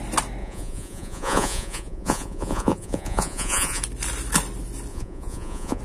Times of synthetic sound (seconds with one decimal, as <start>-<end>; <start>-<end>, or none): 0.4-3.8; 4.9-5.8